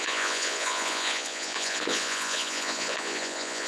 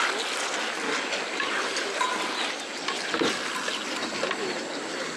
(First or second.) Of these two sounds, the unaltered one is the second